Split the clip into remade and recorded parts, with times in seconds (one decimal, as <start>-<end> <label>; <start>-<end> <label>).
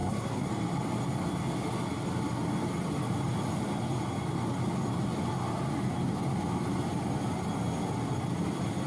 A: 0.0-0.5 remade; 0.5-8.9 recorded